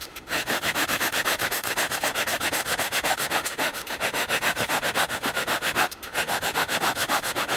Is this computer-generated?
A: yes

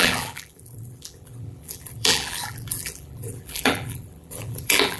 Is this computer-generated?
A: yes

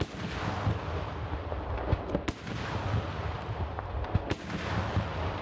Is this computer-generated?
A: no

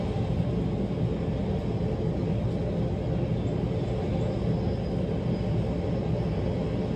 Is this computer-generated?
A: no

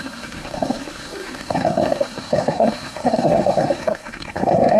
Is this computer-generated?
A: yes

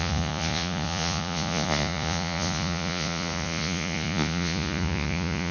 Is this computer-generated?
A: yes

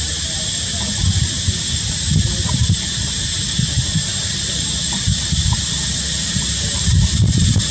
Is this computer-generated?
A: yes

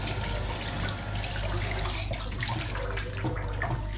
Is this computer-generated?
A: no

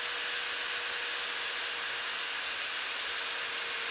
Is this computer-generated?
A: no